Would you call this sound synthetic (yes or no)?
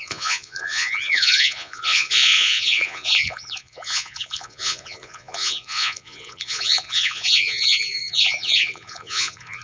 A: yes